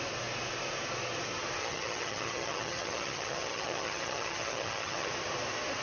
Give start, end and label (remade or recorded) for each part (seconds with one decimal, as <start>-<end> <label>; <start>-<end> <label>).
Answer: 0.0-1.6 recorded; 1.6-5.1 remade; 5.1-5.8 recorded